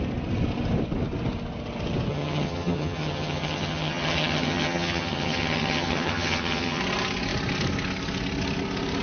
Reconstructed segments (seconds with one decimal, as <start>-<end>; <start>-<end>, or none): 2.1-6.8